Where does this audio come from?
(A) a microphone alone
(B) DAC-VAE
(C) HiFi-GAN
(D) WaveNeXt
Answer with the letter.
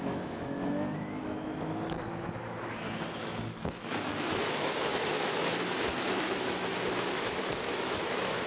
B